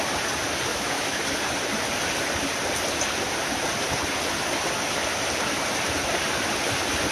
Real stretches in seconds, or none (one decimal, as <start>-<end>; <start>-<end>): 0.0-0.7; 1.2-7.1